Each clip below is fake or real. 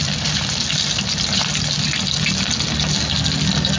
real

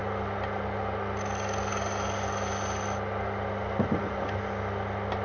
real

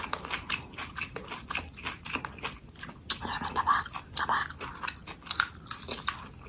real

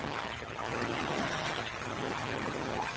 fake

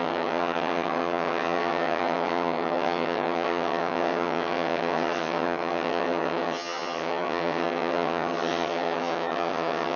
fake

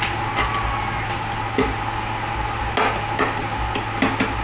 real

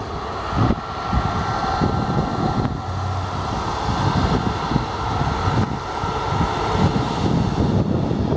real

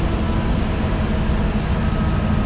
real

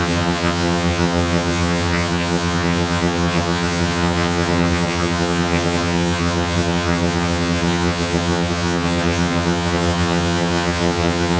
fake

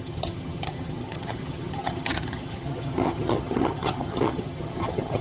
fake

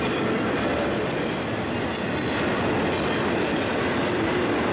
real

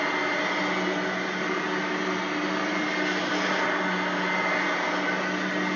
real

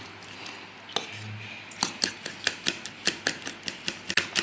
real